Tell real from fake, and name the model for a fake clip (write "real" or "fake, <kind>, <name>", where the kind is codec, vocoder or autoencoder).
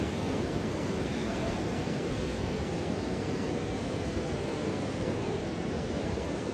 fake, codec, SNAC